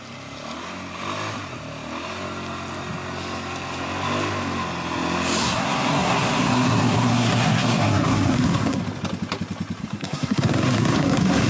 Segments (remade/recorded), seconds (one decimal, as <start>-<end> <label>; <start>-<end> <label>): 0.0-5.4 recorded; 5.4-8.8 remade; 8.8-9.8 recorded; 9.8-11.5 remade